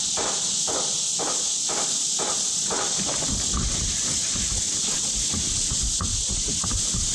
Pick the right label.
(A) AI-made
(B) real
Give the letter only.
B